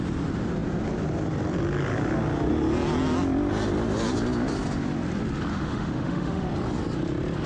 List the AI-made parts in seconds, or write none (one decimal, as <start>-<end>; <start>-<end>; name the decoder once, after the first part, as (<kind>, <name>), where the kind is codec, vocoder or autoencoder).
5.5-6.5 (autoencoder, DAC-VAE)